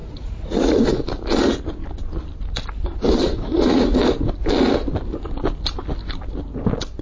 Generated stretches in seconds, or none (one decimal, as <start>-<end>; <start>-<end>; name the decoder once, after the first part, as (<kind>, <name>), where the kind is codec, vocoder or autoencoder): 0.0-0.8 (vocoder, Vocos); 3.2-4.0